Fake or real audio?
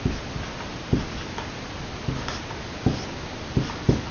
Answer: real